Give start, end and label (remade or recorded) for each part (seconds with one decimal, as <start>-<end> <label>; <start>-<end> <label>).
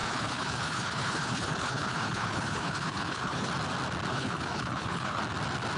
0.0-3.5 remade; 3.5-4.1 recorded; 4.1-5.2 remade; 5.2-5.8 recorded